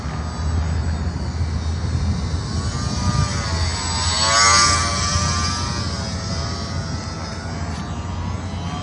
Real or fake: real